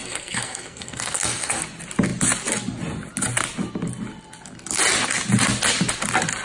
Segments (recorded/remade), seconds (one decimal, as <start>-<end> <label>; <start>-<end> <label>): 0.0-1.6 remade; 1.6-6.4 recorded